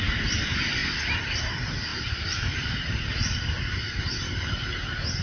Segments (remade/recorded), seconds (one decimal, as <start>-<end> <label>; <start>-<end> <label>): 0.0-0.8 remade; 0.8-1.4 recorded; 1.4-5.2 remade